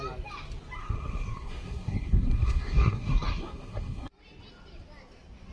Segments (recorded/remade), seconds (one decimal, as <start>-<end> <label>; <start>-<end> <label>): 0.0-0.8 recorded; 0.8-4.1 remade; 4.1-5.5 recorded